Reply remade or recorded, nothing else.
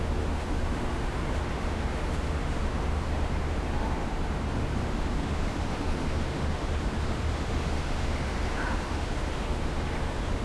remade